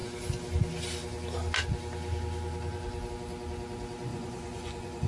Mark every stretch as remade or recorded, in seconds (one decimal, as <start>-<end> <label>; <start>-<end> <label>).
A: 0.0-4.1 recorded; 4.1-5.1 remade

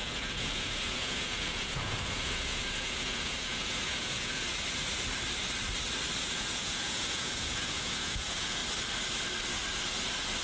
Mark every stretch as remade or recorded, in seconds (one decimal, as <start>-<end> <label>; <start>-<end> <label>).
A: 0.0-4.5 remade; 4.5-6.2 recorded; 6.2-8.6 remade; 8.6-10.4 recorded

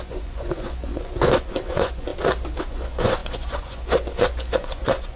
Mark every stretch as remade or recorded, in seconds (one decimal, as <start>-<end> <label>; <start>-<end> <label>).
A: 0.0-2.1 remade; 2.1-2.6 recorded; 2.6-5.2 remade

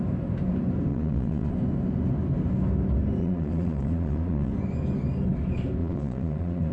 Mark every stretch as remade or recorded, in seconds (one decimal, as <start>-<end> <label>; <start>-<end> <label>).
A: 0.0-0.9 recorded; 0.9-1.5 remade; 1.5-3.2 recorded; 3.2-4.5 remade; 4.5-5.8 recorded; 5.8-6.7 remade

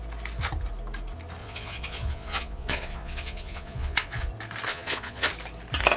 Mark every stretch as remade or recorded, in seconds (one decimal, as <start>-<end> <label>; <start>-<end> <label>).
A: 0.0-1.4 recorded; 1.4-4.3 remade; 4.3-4.7 recorded; 4.7-5.3 remade; 5.3-6.0 recorded

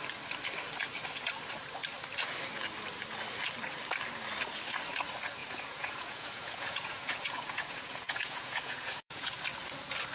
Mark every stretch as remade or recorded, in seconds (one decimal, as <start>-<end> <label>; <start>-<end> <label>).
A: 0.0-5.4 recorded; 5.4-9.4 remade; 9.4-10.1 recorded